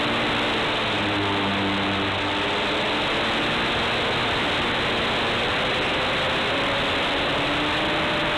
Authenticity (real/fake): real